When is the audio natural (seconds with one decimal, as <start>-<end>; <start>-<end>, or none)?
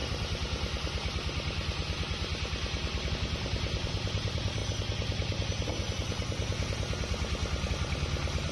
0.0-3.1; 4.6-7.7